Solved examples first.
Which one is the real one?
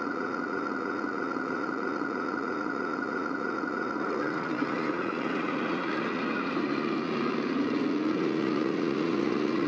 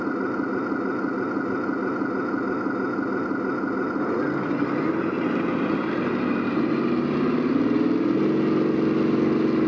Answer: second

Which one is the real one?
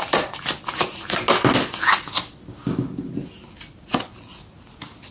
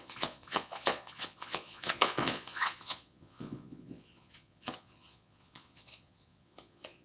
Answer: first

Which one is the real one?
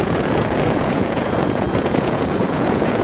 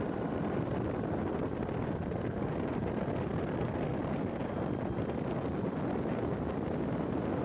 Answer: second